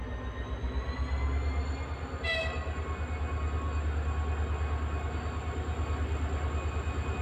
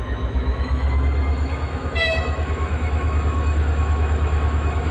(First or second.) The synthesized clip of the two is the second